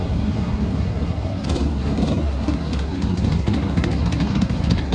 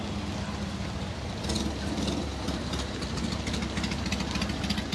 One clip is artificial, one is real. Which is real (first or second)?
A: second